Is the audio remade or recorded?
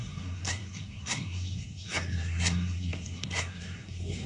remade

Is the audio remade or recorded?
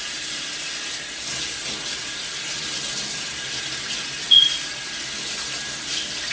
recorded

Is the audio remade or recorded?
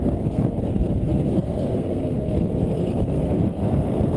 remade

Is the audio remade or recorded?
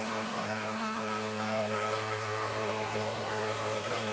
remade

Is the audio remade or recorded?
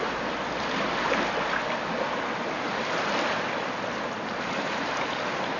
recorded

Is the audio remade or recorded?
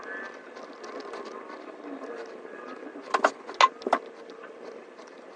recorded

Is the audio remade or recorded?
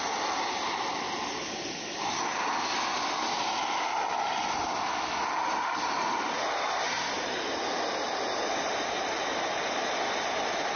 recorded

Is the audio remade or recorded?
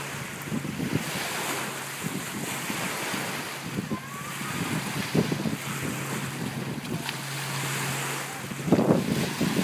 recorded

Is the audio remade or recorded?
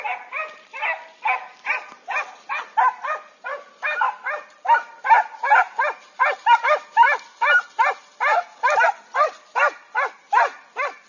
recorded